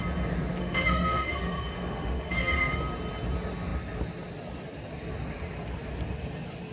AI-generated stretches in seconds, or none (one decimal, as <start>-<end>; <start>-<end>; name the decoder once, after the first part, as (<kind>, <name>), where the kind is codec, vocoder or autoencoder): 0.6-2.8 (autoencoder, DAC-VAE)